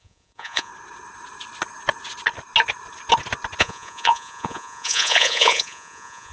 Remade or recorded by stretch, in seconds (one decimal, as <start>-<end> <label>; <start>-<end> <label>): 0.0-0.7 remade; 0.7-3.6 recorded; 3.6-6.3 remade